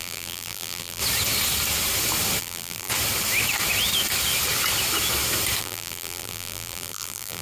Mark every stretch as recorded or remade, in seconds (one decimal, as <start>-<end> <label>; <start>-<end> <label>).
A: 0.0-1.0 remade; 1.0-2.4 recorded; 2.4-2.9 remade; 2.9-5.6 recorded; 5.6-7.4 remade